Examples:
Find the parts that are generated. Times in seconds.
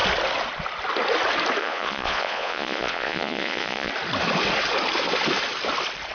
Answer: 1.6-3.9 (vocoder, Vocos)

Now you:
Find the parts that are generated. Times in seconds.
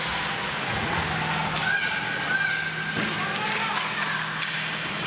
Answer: 0.4-1.0 (vocoder, Vocos)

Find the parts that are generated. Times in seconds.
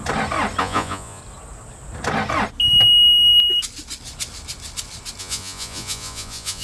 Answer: 0.6-1.2 (vocoder, Vocos); 5.2-6.6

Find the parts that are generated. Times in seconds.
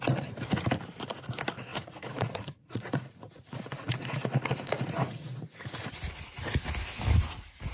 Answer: 1.7-6.1 (vocoder, Vocos)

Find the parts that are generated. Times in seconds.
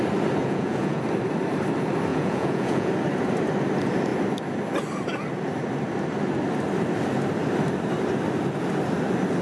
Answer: 0.4-1.0 (vocoder, Vocos); 2.1-2.9